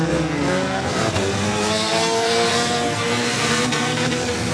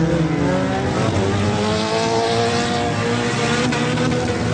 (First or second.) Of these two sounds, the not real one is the first